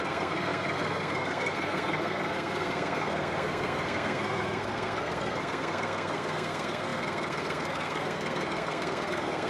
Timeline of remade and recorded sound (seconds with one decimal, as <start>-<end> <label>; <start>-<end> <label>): 0.0-9.5 remade